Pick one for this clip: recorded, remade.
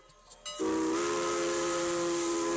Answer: recorded